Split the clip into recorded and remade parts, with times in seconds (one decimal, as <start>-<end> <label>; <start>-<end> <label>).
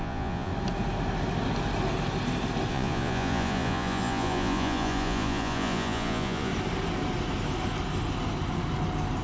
0.0-0.5 remade; 0.5-2.7 recorded; 2.7-6.5 remade; 6.5-9.2 recorded